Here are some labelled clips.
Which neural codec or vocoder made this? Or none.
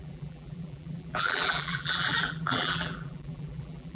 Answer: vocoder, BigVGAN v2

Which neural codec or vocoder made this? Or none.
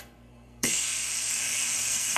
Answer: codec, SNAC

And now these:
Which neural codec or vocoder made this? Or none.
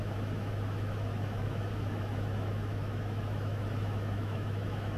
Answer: autoencoder, DAC-VAE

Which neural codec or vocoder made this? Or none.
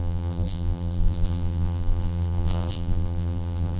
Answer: vocoder, BigVGAN v2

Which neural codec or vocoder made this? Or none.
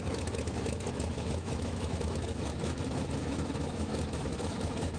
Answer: autoencoder, DAC-VAE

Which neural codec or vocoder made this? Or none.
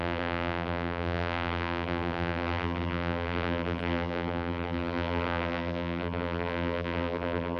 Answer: vocoder, BigVGAN v2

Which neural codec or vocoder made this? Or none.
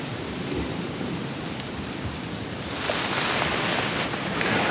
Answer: none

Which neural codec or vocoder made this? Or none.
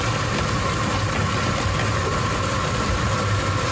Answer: none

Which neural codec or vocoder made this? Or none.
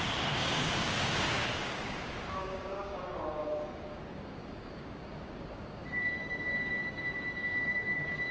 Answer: codec, DAC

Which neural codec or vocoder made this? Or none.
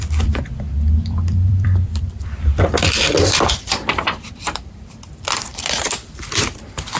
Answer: vocoder, BigVGAN v2